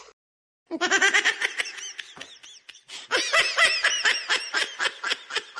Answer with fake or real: real